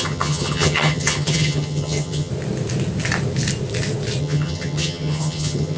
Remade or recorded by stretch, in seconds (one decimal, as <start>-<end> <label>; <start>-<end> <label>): 0.0-2.3 remade; 2.3-4.2 recorded; 4.2-5.8 remade